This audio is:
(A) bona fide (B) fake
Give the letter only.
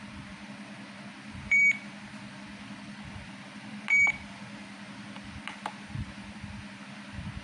B